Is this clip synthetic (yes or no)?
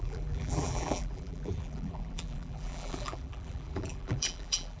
yes